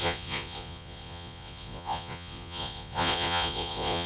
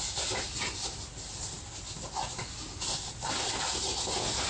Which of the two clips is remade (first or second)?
first